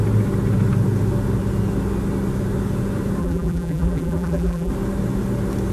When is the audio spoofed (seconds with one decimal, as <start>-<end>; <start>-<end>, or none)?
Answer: 3.2-4.7